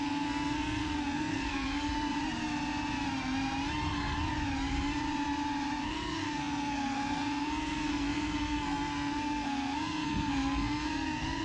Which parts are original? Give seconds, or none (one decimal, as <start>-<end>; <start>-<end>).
2.1-5.8